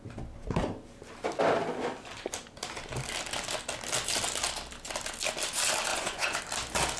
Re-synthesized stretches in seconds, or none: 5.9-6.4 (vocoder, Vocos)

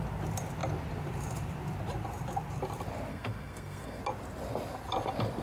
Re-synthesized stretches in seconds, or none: 3.1-4.0 (codec, SNAC)

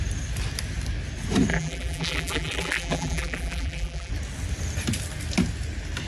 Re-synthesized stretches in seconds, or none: 1.5-4.1 (vocoder, BigVGAN v2)

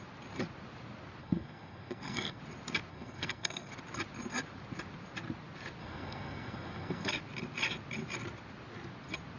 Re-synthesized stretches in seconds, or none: 1.2-2.4 (codec, SNAC); 2.9-3.7; 5.8-7.1

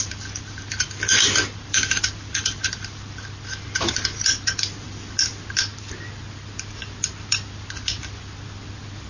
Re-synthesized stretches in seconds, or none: 0.0-5.3 (vocoder, BigVGAN v2)

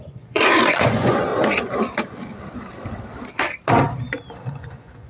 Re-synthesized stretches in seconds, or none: 0.0-1.3 (vocoder, Vocos); 4.4-5.1

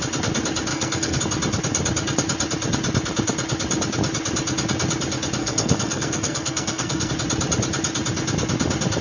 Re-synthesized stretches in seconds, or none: 0.7-1.2 (codec, SNAC); 5.4-7.1